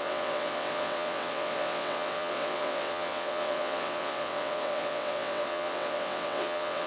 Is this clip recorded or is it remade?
remade